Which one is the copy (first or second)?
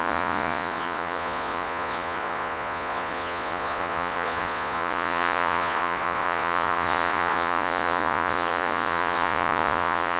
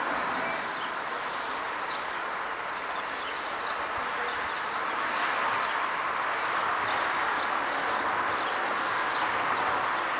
first